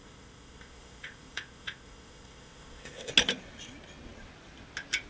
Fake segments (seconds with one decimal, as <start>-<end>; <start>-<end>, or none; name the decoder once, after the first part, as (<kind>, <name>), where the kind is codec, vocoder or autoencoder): 0.0-3.1 (codec, ZipCodec)